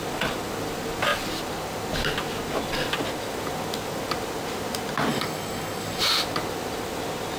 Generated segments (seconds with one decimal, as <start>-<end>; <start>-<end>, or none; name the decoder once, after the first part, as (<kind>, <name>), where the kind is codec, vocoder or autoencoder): 5.1-6.0 (codec, DAC)